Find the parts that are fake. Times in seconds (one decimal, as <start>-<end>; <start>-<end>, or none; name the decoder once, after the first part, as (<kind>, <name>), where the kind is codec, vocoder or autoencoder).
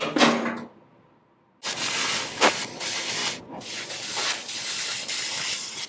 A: 3.2-3.9 (vocoder, Vocos)